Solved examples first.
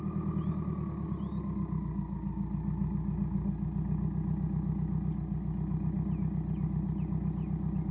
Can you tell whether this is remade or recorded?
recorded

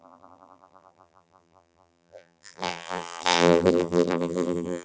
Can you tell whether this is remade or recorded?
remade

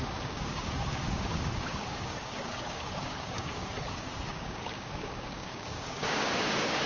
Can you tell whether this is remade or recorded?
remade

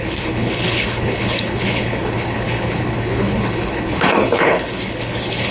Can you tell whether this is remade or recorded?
remade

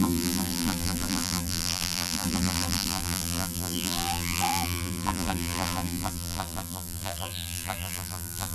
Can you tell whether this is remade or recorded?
remade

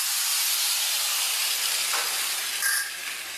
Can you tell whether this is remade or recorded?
recorded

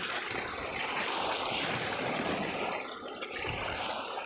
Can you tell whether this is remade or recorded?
remade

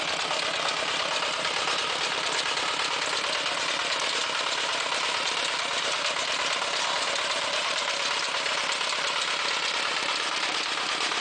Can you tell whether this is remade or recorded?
remade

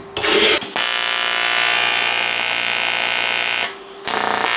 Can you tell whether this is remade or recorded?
recorded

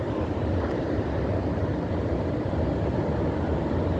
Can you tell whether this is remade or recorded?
recorded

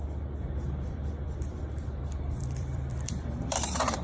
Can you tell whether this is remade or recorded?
remade